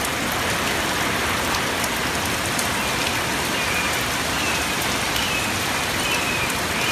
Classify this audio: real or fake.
real